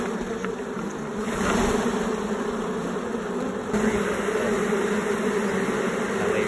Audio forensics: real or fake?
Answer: real